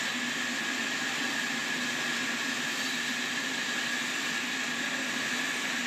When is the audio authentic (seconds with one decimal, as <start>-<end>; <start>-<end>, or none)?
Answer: 0.0-5.9